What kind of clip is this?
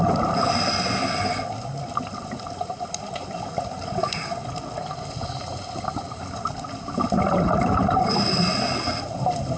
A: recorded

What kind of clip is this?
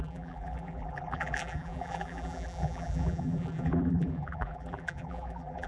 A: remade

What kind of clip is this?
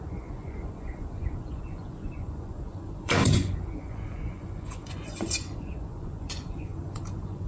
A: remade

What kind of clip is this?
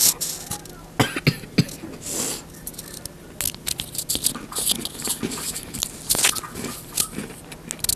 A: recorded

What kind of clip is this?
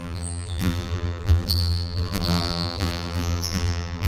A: remade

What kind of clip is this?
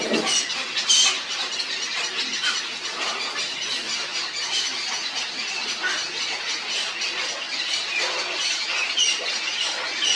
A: recorded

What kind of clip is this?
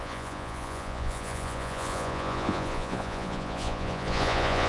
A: remade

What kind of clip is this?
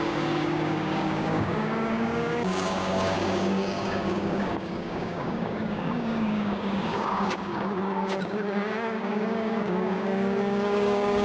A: remade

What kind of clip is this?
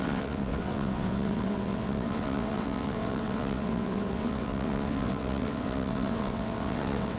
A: remade